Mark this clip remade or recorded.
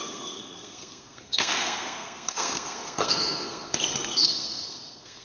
remade